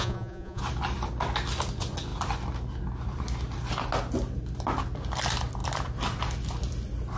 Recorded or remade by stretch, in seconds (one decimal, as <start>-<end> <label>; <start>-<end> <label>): 0.0-0.6 remade; 0.6-7.2 recorded